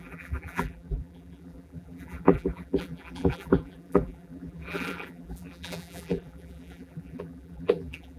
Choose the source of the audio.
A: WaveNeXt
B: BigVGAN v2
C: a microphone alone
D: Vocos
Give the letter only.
B